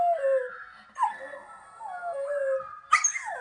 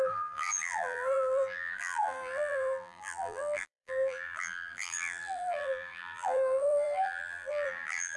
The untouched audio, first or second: first